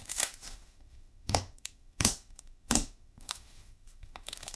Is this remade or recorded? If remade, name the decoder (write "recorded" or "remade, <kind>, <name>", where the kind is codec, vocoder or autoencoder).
remade, autoencoder, DAC-VAE